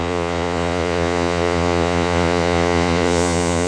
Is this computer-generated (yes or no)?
yes